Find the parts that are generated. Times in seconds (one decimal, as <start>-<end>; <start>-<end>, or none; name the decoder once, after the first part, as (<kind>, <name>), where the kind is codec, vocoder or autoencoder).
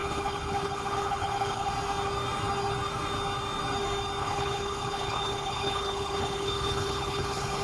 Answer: 0.0-1.7 (codec, HILCodec); 4.2-7.6